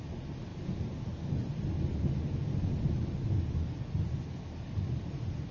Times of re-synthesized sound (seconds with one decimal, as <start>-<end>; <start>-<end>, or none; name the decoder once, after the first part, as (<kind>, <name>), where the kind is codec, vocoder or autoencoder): none